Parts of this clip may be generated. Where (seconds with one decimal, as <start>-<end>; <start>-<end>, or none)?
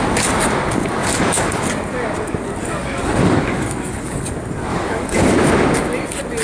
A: 1.0-1.6; 2.6-4.2; 4.7-5.3